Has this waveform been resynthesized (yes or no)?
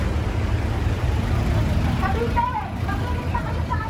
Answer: yes